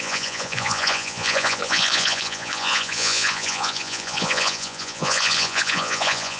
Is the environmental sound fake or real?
fake